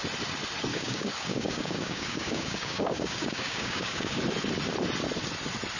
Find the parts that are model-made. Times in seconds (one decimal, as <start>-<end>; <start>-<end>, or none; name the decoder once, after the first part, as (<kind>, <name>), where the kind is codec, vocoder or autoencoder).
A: 0.7-4.2 (codec, DAC)